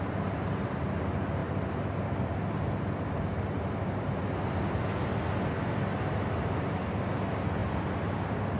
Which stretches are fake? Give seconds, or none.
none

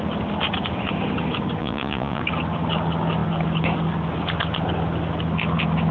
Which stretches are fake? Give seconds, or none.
1.6-2.2 (vocoder, Vocos)

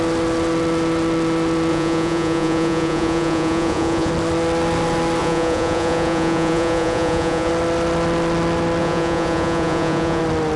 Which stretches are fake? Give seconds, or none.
1.7-4.1 (vocoder, Vocos); 5.2-7.5; 8.8-10.2

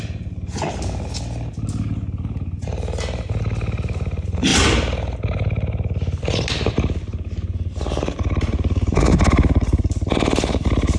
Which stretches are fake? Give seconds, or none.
none

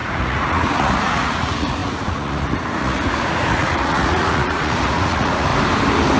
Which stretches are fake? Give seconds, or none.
0.0-5.5 (vocoder, Vocos)

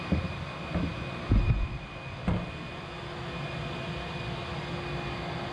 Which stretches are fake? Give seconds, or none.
none

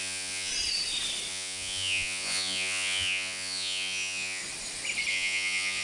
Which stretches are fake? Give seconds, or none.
0.0-0.5 (vocoder, Vocos); 1.3-4.4; 5.1-5.8